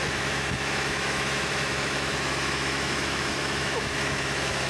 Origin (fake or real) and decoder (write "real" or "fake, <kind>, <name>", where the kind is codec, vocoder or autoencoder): fake, autoencoder, DAC-VAE